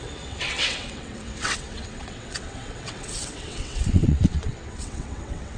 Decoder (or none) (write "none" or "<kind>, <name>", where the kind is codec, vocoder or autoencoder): vocoder, WaveNeXt